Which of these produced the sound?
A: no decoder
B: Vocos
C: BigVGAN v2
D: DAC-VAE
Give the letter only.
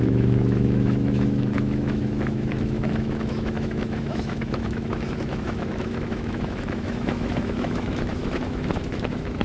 D